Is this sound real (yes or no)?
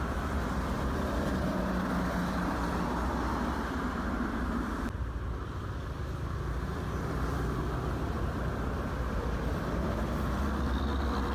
yes